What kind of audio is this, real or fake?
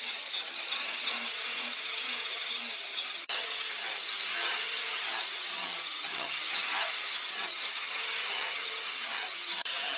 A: fake